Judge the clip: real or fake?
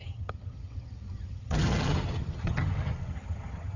fake